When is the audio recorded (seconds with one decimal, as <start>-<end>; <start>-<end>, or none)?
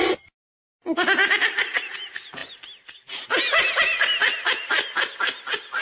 0.0-5.8